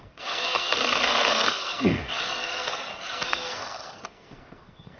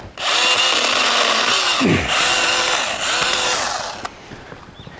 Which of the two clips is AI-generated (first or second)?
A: first